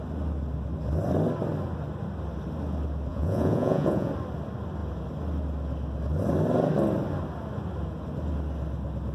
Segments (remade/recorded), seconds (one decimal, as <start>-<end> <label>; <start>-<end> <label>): 0.0-3.1 recorded; 3.1-4.1 remade; 4.1-9.1 recorded